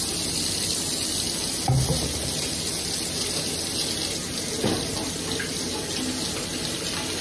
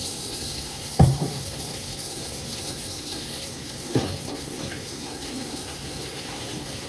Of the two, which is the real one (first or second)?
first